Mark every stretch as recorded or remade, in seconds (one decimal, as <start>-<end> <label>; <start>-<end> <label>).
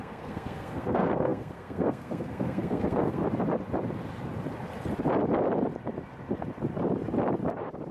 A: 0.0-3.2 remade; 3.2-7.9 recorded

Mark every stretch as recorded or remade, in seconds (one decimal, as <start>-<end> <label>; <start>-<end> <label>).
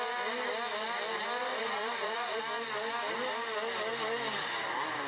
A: 0.0-1.5 recorded; 1.5-2.4 remade; 2.4-5.1 recorded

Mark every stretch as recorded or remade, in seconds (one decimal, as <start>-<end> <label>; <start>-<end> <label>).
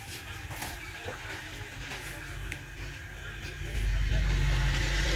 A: 0.0-5.2 recorded